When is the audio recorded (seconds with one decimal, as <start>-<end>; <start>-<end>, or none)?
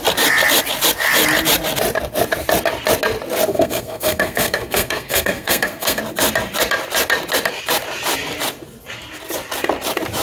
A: 0.0-3.5; 6.0-10.2